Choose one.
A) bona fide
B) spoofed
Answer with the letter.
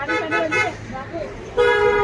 A